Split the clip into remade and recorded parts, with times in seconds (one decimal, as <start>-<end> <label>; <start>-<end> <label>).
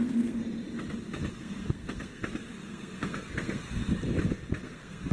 0.0-0.4 remade; 0.4-1.3 recorded; 1.3-3.8 remade; 3.8-4.6 recorded; 4.6-5.1 remade